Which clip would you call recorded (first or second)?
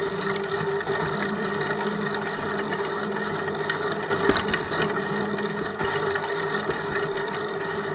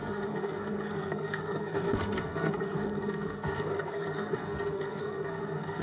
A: first